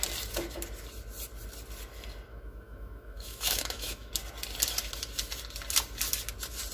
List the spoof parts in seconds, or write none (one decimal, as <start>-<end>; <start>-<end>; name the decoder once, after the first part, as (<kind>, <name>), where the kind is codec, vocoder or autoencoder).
2.3-4.1 (autoencoder, DAC-VAE)